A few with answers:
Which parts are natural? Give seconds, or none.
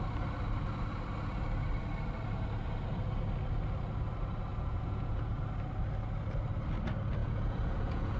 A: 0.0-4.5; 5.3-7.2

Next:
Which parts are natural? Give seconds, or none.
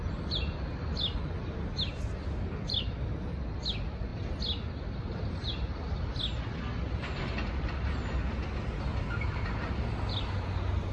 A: 0.0-10.9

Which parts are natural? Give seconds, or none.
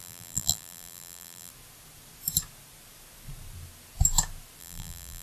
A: 1.5-4.6